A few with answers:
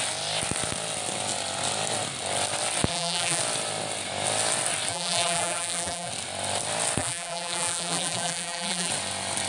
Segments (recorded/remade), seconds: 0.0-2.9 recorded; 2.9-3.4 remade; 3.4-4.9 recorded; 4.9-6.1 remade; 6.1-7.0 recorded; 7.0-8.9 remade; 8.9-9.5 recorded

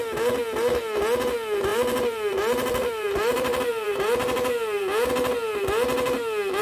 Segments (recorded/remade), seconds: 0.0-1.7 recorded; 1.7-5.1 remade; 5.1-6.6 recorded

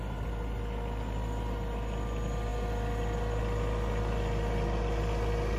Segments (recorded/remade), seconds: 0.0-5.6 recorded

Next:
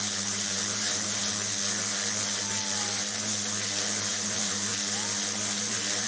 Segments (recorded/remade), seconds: 0.0-1.2 remade; 1.2-4.1 recorded; 4.1-4.7 remade; 4.7-5.6 recorded; 5.6-6.1 remade

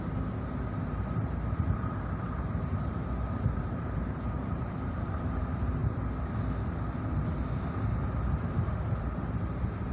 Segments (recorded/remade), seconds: 0.0-5.8 remade; 5.8-8.4 recorded; 8.4-9.9 remade